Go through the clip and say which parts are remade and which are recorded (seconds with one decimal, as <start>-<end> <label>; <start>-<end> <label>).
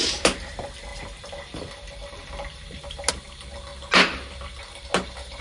0.0-5.4 recorded